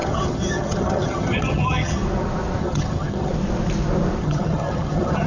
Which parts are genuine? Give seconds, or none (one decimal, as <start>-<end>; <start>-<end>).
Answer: 2.0-2.6; 3.3-4.2